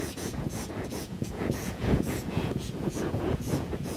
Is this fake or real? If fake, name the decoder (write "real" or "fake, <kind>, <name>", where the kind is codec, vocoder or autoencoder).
fake, vocoder, Vocos